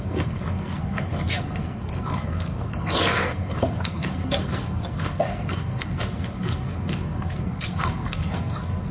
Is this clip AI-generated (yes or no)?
yes